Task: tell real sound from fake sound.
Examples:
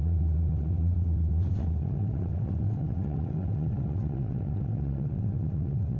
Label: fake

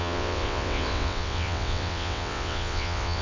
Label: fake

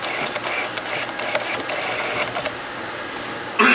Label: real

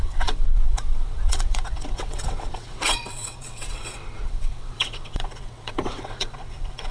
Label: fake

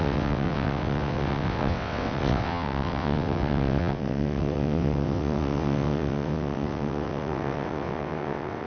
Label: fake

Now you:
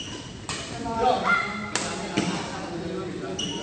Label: real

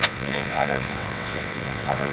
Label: fake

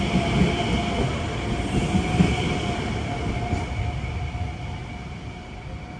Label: real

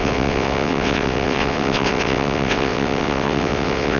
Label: fake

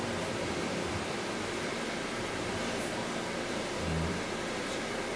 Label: real